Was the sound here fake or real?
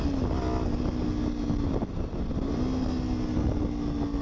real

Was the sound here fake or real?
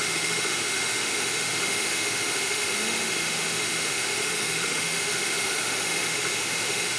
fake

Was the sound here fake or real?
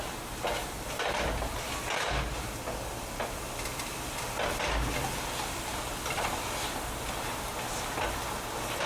real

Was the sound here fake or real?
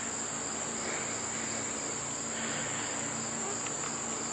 real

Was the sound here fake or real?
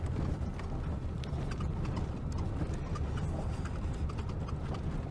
real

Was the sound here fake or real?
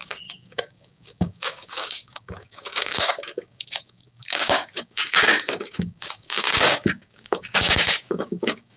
fake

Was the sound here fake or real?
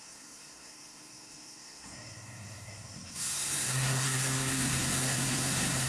fake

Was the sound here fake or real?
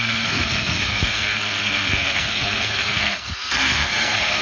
fake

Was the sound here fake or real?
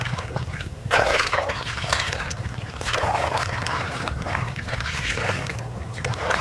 fake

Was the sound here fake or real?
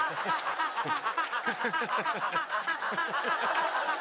fake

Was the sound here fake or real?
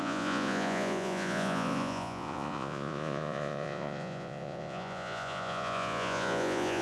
fake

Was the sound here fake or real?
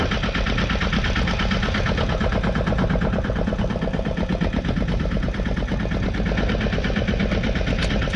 real